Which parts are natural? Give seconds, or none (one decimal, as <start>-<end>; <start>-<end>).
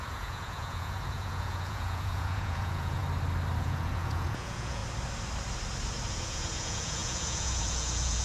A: 3.0-3.6; 4.8-6.1